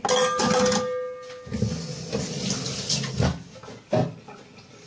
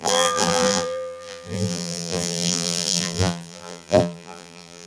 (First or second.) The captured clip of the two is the first